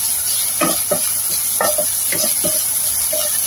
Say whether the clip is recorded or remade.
recorded